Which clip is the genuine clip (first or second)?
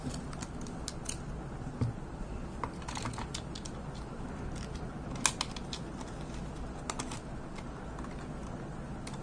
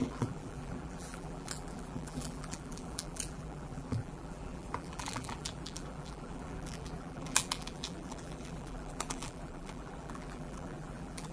first